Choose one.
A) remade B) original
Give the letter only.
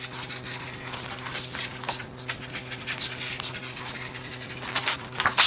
B